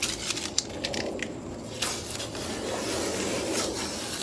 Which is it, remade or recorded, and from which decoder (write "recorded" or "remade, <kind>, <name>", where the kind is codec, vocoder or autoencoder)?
recorded